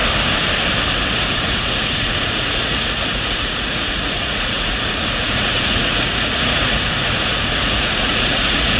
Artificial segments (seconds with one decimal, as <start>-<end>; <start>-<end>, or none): 1.1-8.8